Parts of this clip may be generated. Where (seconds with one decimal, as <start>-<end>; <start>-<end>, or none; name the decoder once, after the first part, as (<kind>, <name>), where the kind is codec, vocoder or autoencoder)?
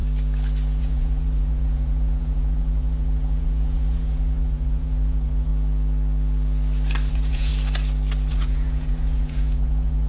0.8-5.5 (vocoder, Vocos); 7.1-7.5; 8.3-10.1